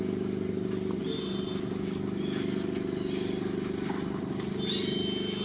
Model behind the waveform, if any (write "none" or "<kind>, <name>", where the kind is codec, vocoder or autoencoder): none